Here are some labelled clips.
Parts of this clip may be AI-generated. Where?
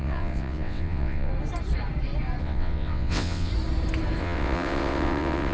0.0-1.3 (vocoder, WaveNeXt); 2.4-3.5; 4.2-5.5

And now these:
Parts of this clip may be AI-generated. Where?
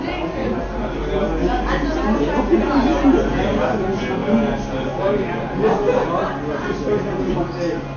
none